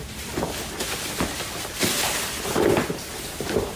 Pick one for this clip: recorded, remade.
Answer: remade